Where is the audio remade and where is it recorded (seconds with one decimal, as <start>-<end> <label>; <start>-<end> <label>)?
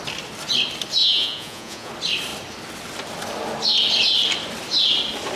0.0-1.0 recorded; 1.0-1.9 remade; 1.9-5.4 recorded